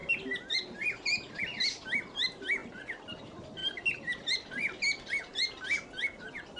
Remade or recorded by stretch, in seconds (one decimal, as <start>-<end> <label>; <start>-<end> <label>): 0.0-6.6 recorded

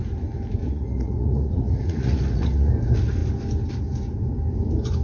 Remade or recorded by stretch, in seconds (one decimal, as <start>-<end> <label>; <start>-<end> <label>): 0.0-0.6 recorded; 0.6-2.7 remade; 2.7-5.0 recorded

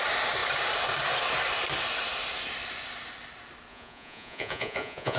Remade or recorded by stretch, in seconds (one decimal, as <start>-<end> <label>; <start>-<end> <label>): 0.0-3.7 recorded; 3.7-5.2 remade

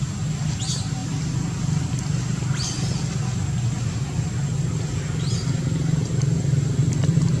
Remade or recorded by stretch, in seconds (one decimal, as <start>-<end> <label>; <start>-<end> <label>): 0.0-7.4 recorded

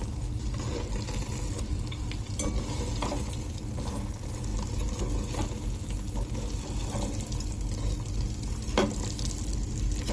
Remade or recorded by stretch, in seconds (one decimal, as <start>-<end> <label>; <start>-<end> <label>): 0.0-10.1 recorded